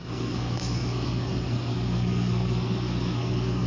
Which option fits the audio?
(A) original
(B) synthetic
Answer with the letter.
B